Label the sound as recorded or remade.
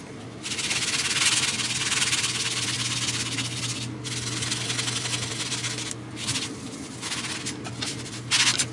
recorded